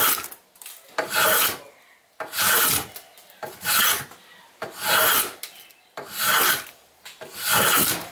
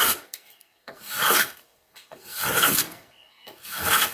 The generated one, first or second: second